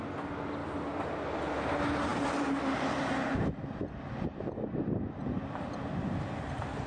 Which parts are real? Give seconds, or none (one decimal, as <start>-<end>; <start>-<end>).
0.0-6.9